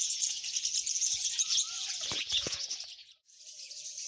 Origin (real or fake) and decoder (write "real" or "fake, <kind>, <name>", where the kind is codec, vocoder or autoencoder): fake, vocoder, Vocos